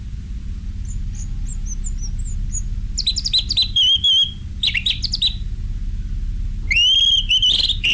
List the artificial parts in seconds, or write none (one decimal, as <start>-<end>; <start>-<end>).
none